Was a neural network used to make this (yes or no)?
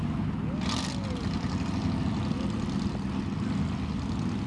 no